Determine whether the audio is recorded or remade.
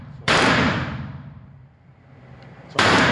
remade